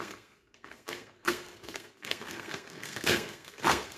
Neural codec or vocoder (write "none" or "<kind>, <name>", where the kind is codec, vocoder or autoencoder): codec, SNAC